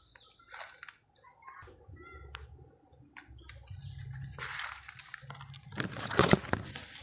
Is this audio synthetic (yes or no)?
no